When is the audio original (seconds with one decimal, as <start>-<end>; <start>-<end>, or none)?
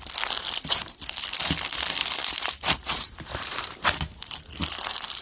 0.0-2.2; 3.8-5.2